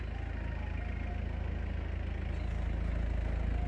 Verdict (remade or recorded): recorded